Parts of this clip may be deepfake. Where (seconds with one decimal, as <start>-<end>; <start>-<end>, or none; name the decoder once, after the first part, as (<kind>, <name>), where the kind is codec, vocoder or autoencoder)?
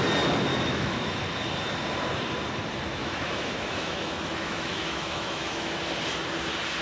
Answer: 0.5-1.2 (autoencoder, DAC-VAE); 3.0-5.8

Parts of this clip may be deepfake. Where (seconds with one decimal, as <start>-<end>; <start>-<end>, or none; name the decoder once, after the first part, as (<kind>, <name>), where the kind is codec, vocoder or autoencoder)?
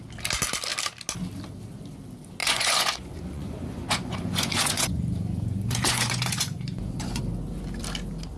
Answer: 2.4-7.2 (vocoder, Vocos)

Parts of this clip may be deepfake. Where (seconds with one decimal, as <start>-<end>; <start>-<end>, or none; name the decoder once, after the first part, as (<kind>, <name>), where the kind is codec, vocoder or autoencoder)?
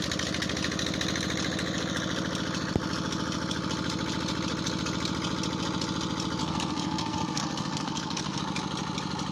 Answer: 6.4-8.4 (codec, SNAC)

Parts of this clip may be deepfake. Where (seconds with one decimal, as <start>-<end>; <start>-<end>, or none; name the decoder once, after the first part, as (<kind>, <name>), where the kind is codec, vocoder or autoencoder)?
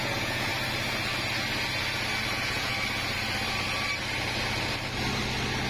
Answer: 0.0-0.5 (vocoder, Vocos); 2.3-2.7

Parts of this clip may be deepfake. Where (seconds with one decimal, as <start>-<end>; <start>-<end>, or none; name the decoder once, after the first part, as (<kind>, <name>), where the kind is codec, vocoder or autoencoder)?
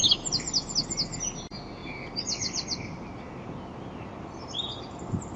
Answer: none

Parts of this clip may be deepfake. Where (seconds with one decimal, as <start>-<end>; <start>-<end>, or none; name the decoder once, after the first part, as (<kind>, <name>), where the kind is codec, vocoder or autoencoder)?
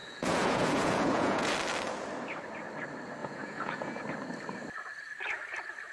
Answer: 0.0-1.5 (vocoder, Vocos); 3.2-4.0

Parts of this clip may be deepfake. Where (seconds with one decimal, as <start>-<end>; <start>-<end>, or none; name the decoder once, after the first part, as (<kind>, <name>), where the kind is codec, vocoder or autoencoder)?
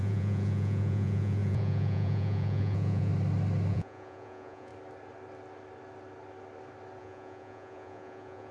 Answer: 0.0-3.1 (vocoder, Vocos); 3.7-4.7; 7.0-8.5